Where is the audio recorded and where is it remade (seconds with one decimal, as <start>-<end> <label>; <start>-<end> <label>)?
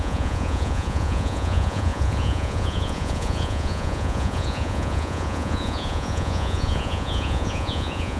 0.0-8.2 remade